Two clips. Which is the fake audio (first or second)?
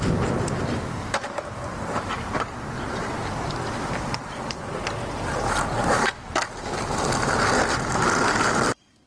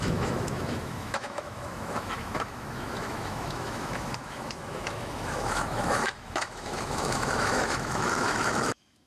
second